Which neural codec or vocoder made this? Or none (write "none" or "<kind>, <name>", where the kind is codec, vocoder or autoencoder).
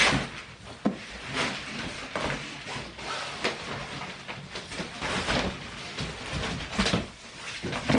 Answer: none